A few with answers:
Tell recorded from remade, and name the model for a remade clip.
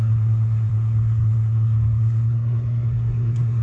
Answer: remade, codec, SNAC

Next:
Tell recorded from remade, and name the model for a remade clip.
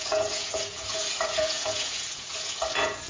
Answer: remade, vocoder, Vocos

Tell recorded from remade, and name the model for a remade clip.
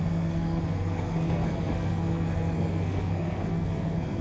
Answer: remade, codec, SNAC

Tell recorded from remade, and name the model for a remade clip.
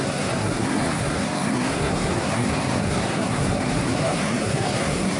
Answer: remade, codec, SNAC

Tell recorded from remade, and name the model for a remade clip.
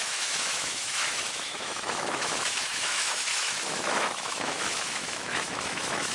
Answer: remade, autoencoder, DAC-VAE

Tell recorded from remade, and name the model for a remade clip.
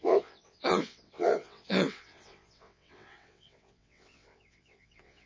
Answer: remade, vocoder, WaveNeXt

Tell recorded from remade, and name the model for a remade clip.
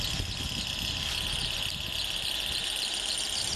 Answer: recorded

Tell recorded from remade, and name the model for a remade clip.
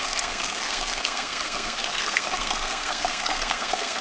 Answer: remade, codec, SNAC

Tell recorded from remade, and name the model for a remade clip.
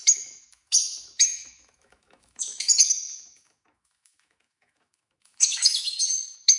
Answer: remade, autoencoder, DAC-VAE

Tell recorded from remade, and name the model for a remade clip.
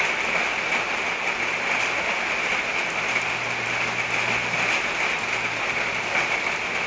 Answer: recorded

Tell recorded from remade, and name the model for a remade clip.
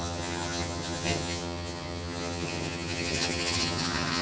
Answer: remade, vocoder, HiFi-GAN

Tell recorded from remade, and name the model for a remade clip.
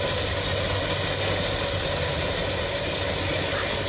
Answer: recorded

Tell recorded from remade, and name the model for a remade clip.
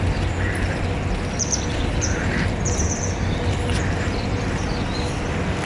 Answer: recorded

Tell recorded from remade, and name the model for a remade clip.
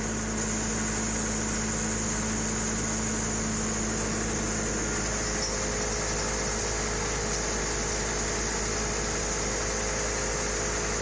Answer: recorded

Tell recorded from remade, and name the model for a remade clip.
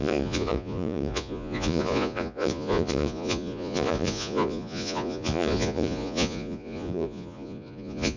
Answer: remade, vocoder, Vocos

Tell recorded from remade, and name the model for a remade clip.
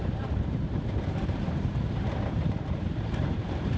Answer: remade, vocoder, BigVGAN v2